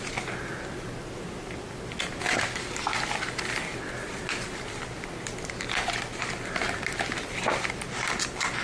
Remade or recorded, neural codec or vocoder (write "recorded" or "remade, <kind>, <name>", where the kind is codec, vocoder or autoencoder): recorded